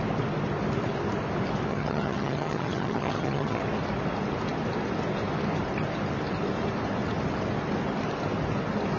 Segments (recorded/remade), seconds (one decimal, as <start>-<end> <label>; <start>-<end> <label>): 0.0-1.7 recorded; 1.7-3.6 remade; 3.6-9.0 recorded